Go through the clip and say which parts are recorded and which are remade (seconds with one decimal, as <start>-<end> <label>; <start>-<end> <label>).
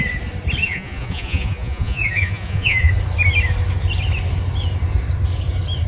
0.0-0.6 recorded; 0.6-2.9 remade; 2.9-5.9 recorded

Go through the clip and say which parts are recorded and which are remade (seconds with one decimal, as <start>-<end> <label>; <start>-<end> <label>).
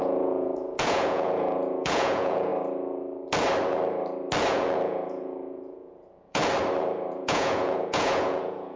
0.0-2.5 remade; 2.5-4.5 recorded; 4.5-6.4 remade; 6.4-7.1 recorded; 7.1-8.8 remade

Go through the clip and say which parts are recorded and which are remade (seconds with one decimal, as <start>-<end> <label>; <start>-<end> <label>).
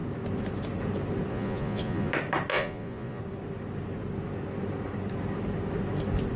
0.0-1.3 recorded; 1.3-2.1 remade; 2.1-2.5 recorded; 2.5-3.2 remade; 3.2-6.4 recorded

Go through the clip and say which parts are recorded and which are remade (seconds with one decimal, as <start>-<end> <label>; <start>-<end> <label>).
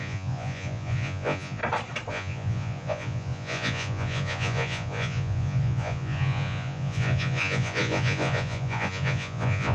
0.0-1.6 remade; 1.6-2.1 recorded; 2.1-9.7 remade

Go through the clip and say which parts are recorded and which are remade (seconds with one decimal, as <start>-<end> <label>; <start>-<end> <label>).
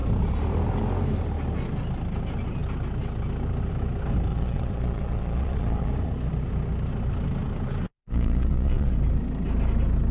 0.0-4.3 recorded; 4.3-5.9 remade; 5.9-7.9 recorded; 7.9-8.9 remade; 8.9-10.1 recorded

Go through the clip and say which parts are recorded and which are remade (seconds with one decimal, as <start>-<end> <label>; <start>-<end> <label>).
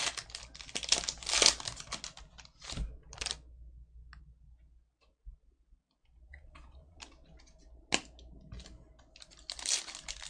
0.0-6.3 recorded; 6.3-7.0 remade; 7.0-10.3 recorded